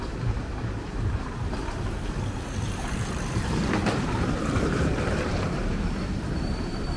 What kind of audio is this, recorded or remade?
remade